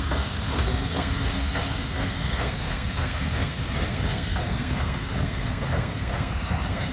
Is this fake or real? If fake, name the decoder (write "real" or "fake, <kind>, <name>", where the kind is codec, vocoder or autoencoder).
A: fake, codec, SNAC